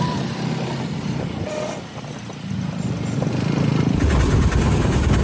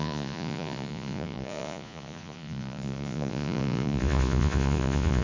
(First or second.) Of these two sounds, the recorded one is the first